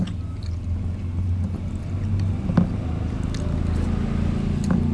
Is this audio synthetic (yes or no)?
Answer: no